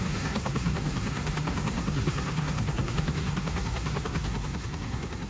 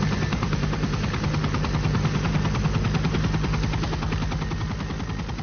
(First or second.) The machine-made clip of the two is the first